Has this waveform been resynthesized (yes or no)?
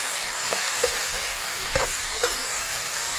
yes